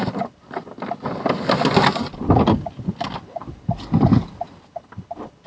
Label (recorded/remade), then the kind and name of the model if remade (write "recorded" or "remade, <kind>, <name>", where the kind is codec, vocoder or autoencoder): recorded